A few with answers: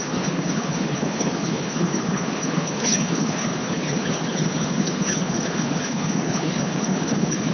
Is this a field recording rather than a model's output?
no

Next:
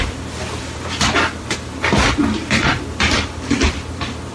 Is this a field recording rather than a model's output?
no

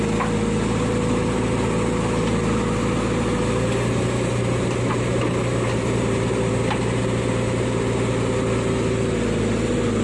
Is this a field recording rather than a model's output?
yes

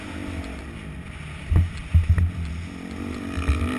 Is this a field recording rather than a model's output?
yes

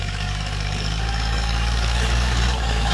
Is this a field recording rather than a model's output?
no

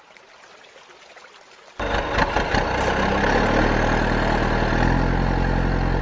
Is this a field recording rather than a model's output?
yes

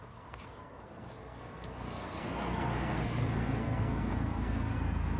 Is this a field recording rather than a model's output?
no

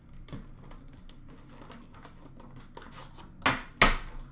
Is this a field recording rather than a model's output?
yes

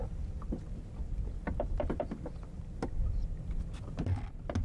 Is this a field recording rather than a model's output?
yes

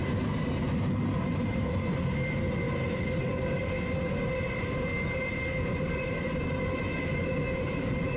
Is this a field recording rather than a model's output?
yes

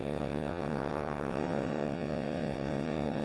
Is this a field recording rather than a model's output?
no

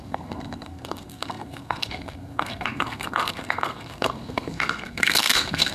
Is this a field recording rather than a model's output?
no